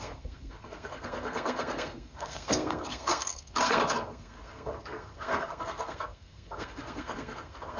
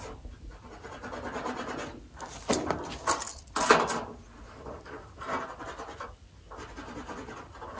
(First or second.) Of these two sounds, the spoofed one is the first